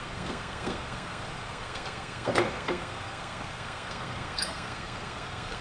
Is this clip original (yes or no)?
no